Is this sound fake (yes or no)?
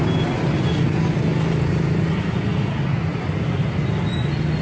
no